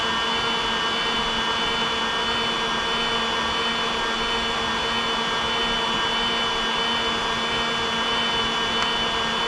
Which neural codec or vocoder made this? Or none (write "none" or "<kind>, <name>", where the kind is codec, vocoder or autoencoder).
none